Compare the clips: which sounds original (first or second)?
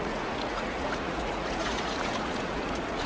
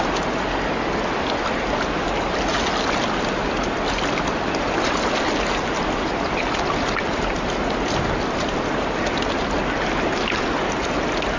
second